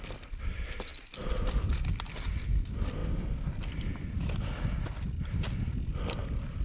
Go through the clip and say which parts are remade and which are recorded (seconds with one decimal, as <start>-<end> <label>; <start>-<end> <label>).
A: 0.0-6.6 recorded